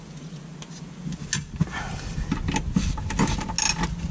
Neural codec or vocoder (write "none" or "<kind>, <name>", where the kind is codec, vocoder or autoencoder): none